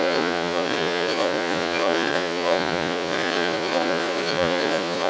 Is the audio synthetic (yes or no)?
yes